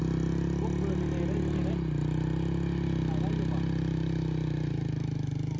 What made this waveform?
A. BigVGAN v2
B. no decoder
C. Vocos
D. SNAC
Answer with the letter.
B